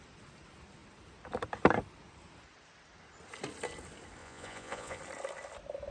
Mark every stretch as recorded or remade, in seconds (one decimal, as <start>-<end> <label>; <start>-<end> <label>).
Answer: 0.0-4.2 recorded; 4.2-5.0 remade; 5.0-5.9 recorded